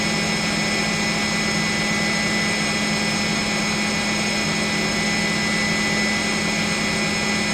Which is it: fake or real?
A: real